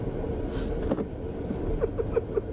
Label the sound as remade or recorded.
recorded